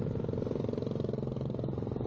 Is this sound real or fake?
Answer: fake